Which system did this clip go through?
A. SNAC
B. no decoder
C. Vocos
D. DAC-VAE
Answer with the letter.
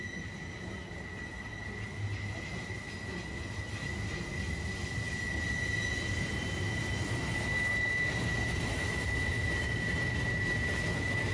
B